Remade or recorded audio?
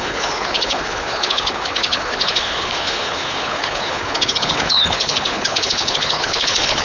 remade